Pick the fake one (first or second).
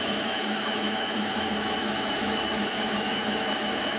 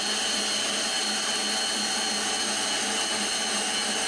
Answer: first